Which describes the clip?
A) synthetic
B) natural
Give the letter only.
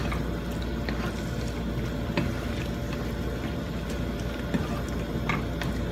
B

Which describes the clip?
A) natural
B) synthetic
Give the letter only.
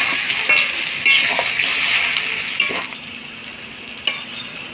A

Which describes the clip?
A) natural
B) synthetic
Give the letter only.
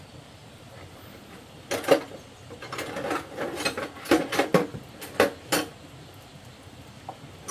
A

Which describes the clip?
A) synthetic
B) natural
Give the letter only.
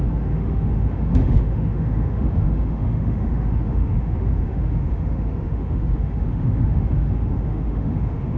A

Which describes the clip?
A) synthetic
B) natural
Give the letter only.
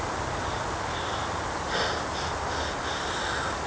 B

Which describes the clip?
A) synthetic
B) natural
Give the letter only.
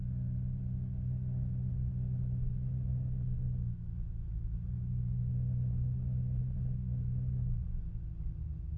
B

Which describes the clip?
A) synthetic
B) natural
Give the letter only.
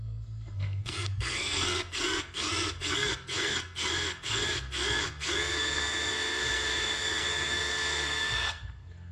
A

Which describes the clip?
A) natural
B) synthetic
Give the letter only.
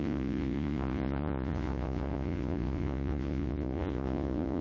B